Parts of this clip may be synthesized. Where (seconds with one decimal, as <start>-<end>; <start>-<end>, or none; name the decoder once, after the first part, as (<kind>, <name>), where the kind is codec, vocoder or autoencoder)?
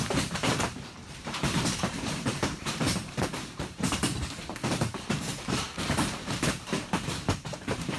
0.0-4.0 (vocoder, BigVGAN v2); 4.7-8.0